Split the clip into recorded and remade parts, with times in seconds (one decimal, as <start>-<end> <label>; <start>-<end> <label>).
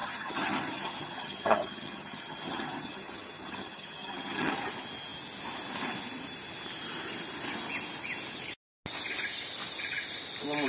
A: 0.0-4.5 remade; 4.5-10.7 recorded